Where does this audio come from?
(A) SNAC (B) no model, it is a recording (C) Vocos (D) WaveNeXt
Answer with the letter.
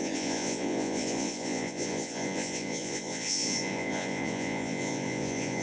C